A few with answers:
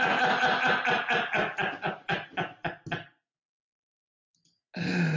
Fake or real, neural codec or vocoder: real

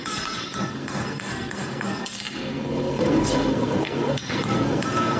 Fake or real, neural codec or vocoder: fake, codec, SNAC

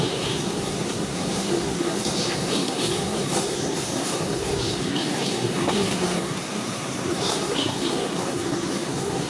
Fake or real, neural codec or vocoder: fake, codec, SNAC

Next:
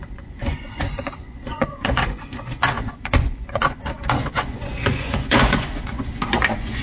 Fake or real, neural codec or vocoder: fake, vocoder, Vocos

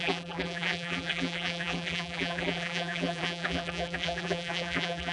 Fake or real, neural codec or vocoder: fake, vocoder, BigVGAN v2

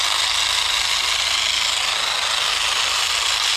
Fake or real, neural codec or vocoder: real